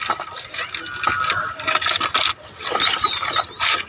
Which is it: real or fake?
real